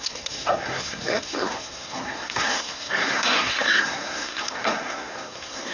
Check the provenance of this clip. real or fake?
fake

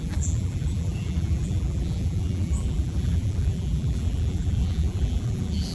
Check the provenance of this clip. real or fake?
fake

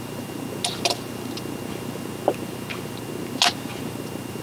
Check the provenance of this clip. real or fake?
real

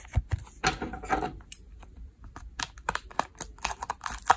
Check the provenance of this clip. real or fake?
fake